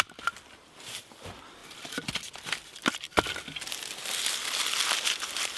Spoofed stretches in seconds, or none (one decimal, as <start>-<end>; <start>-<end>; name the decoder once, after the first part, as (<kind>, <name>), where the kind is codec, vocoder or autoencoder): none

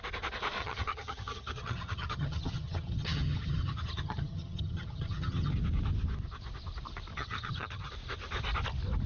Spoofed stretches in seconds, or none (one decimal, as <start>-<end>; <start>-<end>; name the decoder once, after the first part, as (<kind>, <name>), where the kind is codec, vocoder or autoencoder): 0.6-5.5 (vocoder, HiFi-GAN); 7.1-7.9